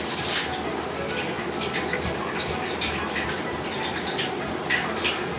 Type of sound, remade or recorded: recorded